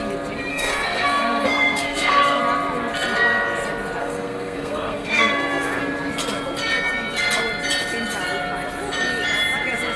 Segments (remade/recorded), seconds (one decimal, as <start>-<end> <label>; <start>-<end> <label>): 0.0-0.5 recorded; 0.5-2.4 remade; 2.4-4.0 recorded; 4.0-5.8 remade; 5.8-10.0 recorded